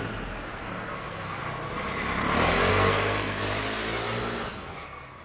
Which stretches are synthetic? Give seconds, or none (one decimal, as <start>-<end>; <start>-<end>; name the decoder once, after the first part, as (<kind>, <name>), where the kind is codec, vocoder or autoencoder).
0.5-1.4 (codec, SNAC); 2.7-3.4; 4.5-5.2